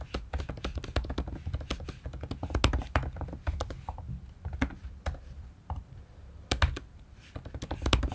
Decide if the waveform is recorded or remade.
recorded